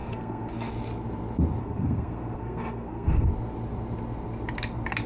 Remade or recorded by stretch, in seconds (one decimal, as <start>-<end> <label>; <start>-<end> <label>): 0.0-0.7 remade; 0.7-1.6 recorded; 1.6-3.3 remade; 3.3-5.1 recorded